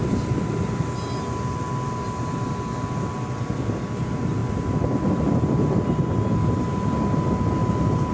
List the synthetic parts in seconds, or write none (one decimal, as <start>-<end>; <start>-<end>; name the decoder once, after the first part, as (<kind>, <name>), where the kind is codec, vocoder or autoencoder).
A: none